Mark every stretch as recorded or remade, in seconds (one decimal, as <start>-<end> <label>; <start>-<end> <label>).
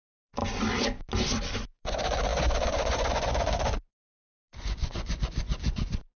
0.0-0.4 remade; 0.4-1.6 recorded; 1.6-6.2 remade